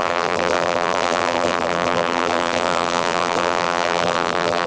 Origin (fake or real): fake